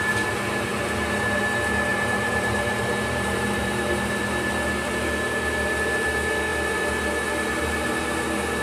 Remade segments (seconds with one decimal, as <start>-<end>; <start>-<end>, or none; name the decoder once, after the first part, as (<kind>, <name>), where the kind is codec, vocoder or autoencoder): 0.7-1.4 (vocoder, BigVGAN v2); 1.9-4.2